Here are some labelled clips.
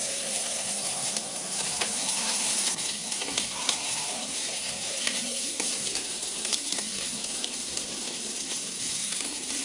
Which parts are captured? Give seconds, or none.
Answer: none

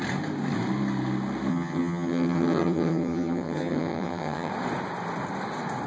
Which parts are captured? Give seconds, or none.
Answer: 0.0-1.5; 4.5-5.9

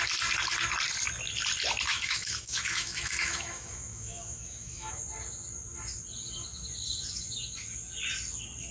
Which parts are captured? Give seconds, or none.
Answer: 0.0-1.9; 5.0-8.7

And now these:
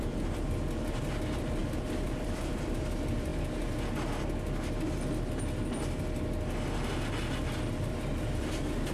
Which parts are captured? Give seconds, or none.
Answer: 3.3-7.7

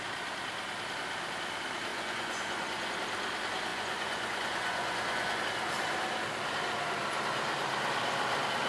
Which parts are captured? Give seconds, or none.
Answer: 0.0-1.9; 2.9-3.7; 5.4-8.7

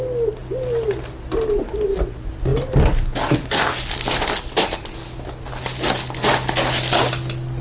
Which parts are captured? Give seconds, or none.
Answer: 0.0-7.6